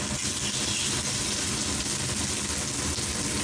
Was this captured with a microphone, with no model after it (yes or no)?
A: yes